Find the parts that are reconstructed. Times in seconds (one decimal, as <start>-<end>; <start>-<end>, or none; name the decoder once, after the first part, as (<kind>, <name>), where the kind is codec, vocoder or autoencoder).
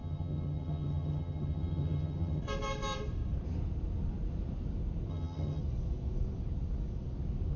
0.0-2.4 (vocoder, HiFi-GAN); 5.1-5.6